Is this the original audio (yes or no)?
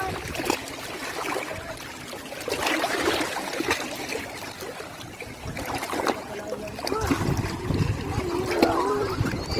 yes